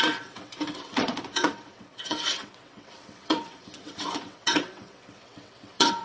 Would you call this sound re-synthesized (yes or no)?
yes